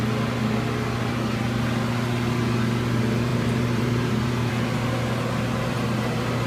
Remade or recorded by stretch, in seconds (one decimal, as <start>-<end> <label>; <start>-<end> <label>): 0.0-3.3 recorded; 3.3-4.5 remade; 4.5-6.5 recorded